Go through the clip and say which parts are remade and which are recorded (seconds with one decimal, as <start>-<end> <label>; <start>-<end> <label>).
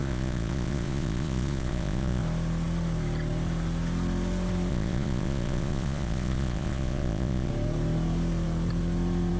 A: 0.0-2.2 remade; 2.2-4.7 recorded; 4.7-7.5 remade; 7.5-9.4 recorded